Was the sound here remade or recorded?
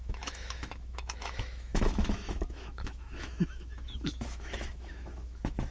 remade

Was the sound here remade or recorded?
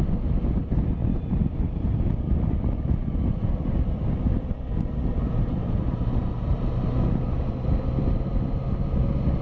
recorded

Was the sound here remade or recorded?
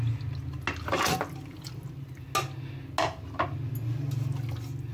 recorded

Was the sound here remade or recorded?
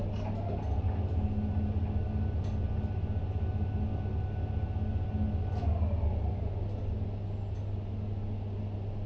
recorded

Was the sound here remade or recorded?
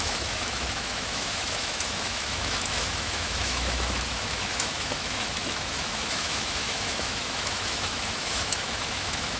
remade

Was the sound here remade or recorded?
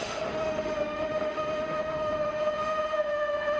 remade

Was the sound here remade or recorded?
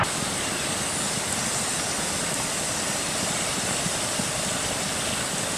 recorded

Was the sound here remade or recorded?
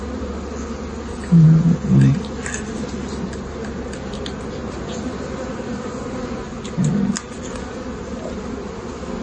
recorded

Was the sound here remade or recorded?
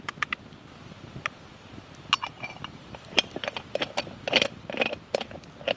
recorded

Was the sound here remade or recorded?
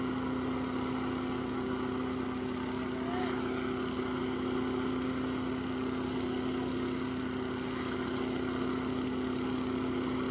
recorded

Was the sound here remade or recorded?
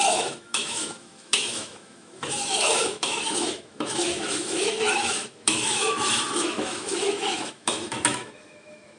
remade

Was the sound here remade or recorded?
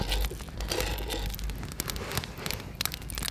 recorded